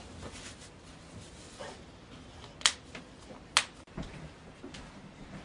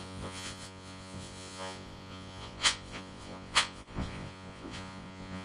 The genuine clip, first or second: first